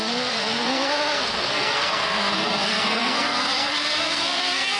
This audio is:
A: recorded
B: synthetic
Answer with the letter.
B